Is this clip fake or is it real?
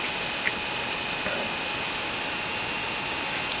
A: real